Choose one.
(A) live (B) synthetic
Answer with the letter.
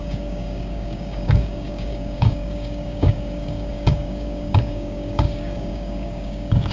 B